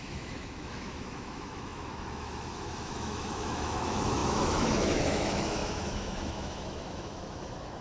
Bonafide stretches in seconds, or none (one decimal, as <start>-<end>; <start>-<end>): none